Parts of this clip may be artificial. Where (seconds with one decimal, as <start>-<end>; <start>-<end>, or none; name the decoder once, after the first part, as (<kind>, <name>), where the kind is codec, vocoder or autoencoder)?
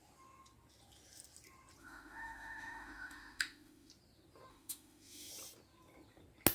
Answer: 1.8-3.9 (autoencoder, DAC-VAE); 4.5-5.3